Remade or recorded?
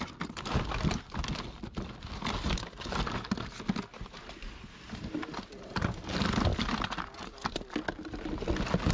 recorded